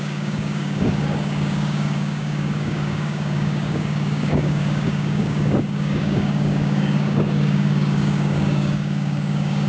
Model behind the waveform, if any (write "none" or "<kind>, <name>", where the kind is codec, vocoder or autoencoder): codec, DAC